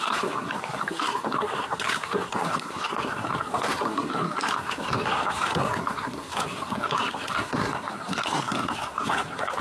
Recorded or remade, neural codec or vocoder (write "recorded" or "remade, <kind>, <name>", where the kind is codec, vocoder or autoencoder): remade, codec, SNAC